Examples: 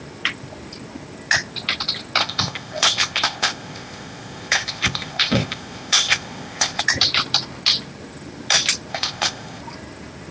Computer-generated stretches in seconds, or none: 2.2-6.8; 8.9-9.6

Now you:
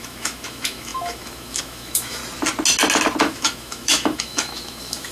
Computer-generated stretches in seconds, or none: 0.0-2.2; 3.2-5.1